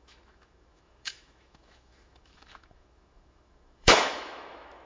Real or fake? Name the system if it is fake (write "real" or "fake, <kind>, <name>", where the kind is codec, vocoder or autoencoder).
fake, autoencoder, DAC-VAE